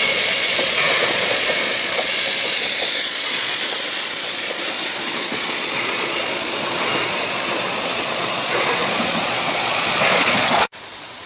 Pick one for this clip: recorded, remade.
remade